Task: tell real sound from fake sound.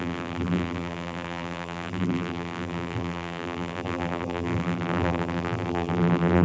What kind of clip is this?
fake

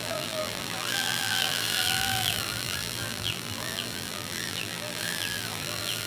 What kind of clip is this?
fake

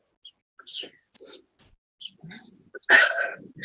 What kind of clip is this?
real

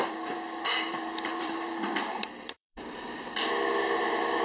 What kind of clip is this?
fake